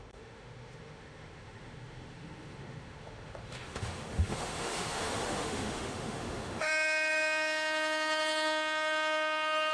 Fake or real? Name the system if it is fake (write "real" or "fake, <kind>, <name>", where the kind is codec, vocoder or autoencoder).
fake, autoencoder, DAC-VAE